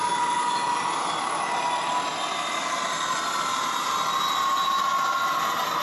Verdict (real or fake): real